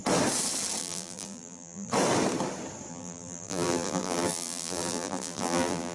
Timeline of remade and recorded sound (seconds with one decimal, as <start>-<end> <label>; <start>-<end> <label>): 0.0-0.8 recorded; 0.8-1.9 remade; 1.9-2.9 recorded; 2.9-5.9 remade